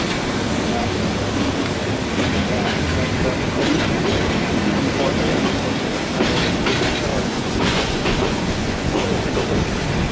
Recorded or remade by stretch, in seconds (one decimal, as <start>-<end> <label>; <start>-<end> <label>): 0.0-7.1 recorded; 7.1-9.3 remade; 9.3-10.1 recorded